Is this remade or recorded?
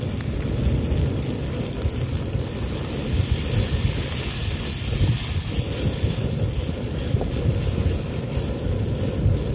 recorded